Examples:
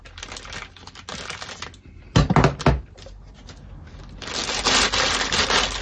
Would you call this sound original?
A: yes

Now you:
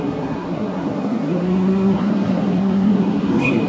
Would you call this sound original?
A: no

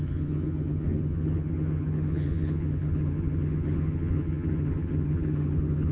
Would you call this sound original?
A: no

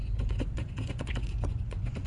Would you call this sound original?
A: no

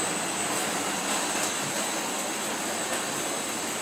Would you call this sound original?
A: yes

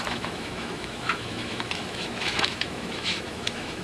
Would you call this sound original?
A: no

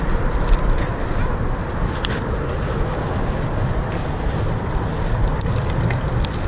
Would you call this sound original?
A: yes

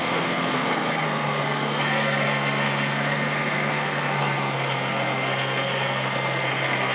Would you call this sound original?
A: no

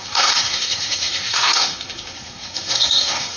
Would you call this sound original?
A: no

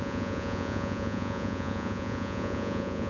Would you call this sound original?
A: no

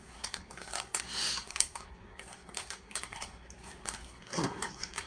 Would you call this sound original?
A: no